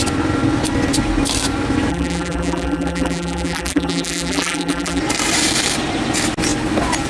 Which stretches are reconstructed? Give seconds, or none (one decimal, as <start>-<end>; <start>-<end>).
1.9-5.0